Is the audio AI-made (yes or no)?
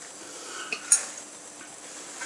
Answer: no